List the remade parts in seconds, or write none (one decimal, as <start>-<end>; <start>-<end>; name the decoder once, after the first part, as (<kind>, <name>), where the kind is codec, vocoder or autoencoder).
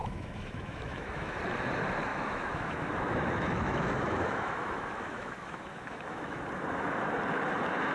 0.0-1.4 (autoencoder, DAC-VAE); 2.1-6.4